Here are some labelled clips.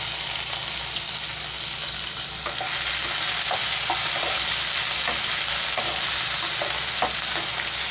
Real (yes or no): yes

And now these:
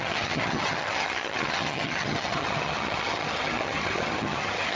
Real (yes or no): no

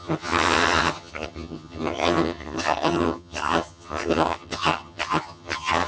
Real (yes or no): no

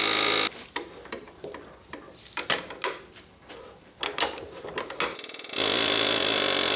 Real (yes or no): yes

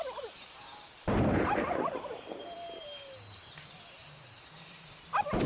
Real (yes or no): yes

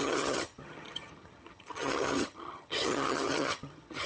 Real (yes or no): no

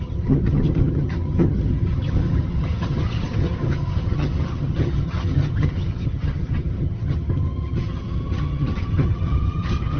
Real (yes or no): no